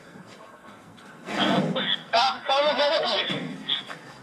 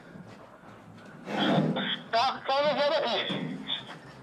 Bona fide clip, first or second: second